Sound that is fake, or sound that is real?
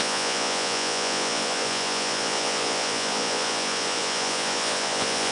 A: fake